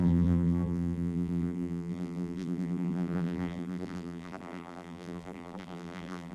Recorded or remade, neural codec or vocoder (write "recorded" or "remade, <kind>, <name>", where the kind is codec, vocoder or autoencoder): remade, vocoder, BigVGAN v2